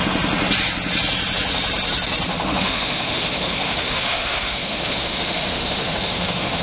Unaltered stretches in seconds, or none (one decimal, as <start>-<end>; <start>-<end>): 0.0-2.3